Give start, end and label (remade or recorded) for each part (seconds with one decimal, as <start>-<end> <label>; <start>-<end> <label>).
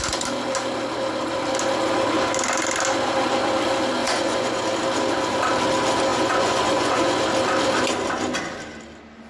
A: 0.0-4.0 recorded; 4.0-4.6 remade; 4.6-6.1 recorded; 6.1-7.2 remade; 7.2-9.3 recorded